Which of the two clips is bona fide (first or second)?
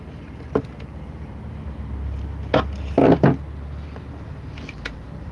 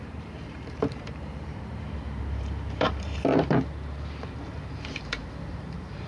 first